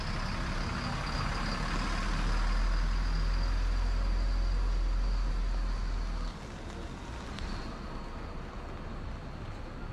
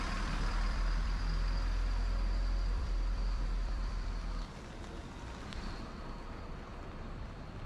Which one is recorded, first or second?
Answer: first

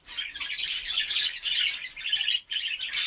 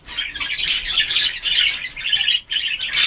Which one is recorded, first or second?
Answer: second